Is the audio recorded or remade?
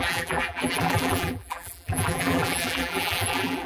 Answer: remade